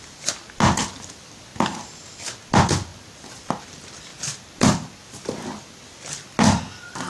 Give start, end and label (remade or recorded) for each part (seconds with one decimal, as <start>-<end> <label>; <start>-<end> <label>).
0.0-7.1 recorded